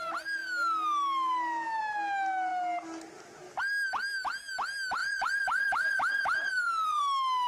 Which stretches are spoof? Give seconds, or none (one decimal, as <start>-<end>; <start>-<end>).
5.0-7.0